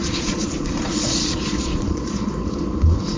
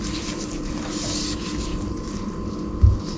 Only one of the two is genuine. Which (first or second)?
second